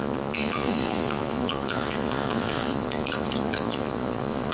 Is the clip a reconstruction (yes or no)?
yes